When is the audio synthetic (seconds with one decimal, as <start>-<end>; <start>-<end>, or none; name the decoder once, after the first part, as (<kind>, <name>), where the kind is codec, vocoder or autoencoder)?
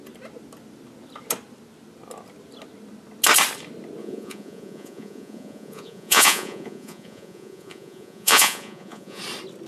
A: 4.0-9.2 (vocoder, Vocos)